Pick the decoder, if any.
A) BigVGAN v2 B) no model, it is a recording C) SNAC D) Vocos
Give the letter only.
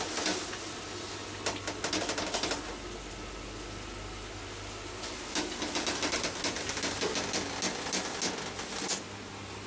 B